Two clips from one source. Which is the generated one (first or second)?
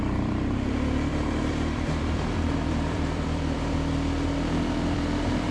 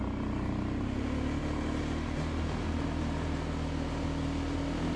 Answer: first